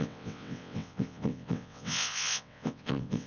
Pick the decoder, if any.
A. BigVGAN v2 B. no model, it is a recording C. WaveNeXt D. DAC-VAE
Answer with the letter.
C